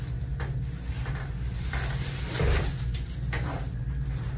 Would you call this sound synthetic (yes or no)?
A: no